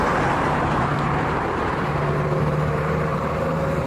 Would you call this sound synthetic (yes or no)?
yes